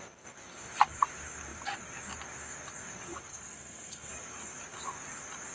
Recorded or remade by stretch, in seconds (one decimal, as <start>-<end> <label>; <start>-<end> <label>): 0.0-3.3 recorded; 3.3-4.1 remade; 4.1-5.5 recorded